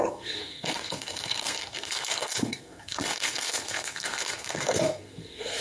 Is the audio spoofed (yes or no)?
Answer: yes